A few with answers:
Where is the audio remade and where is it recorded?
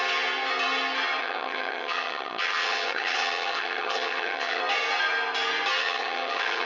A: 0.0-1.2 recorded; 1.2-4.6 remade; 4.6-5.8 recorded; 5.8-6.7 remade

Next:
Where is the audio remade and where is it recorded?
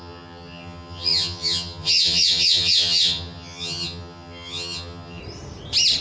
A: 0.0-5.2 remade; 5.2-6.0 recorded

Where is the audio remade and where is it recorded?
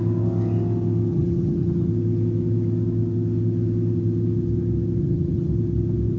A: 0.0-1.1 recorded; 1.1-1.9 remade; 1.9-5.0 recorded; 5.0-5.5 remade; 5.5-6.2 recorded